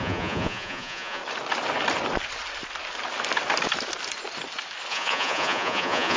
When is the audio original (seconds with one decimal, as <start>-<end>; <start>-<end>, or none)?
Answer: 1.2-4.9